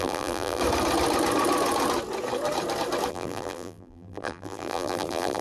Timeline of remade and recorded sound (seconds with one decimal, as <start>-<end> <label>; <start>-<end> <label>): 0.0-0.6 remade; 0.6-3.1 recorded; 3.1-5.4 remade